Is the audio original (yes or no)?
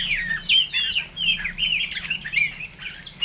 yes